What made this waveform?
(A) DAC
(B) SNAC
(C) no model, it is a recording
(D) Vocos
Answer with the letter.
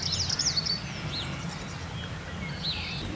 C